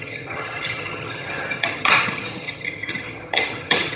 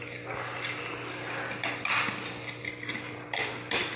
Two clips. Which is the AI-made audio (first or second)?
first